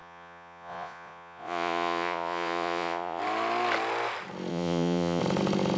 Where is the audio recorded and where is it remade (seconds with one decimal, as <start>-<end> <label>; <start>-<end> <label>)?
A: 0.0-3.2 remade; 3.2-4.5 recorded; 4.5-5.2 remade; 5.2-5.8 recorded